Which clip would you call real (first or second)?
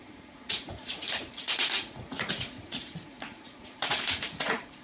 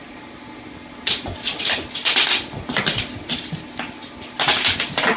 second